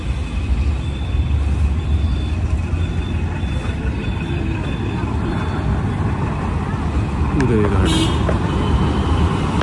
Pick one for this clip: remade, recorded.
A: recorded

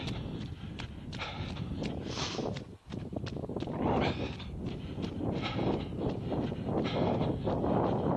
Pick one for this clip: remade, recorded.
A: recorded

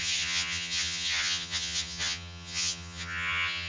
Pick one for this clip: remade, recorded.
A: remade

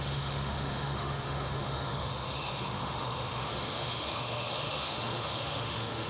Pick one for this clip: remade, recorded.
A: remade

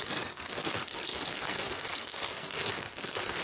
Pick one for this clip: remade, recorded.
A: remade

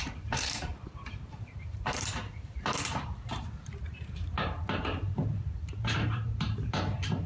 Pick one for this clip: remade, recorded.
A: remade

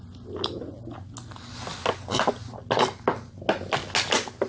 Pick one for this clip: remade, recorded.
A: recorded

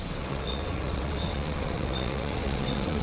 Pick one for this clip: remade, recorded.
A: remade